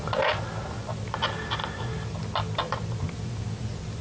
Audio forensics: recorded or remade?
recorded